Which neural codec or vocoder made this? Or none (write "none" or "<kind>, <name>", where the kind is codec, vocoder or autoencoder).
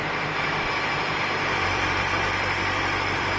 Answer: vocoder, BigVGAN v2